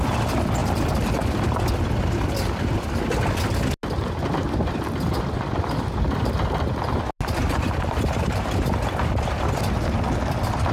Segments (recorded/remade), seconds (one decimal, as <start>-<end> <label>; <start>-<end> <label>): 0.0-7.4 recorded; 7.4-8.7 remade; 8.7-10.7 recorded